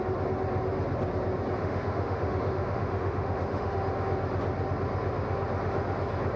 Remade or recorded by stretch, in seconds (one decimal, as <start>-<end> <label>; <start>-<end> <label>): 0.0-1.6 recorded; 1.6-3.8 remade; 3.8-6.4 recorded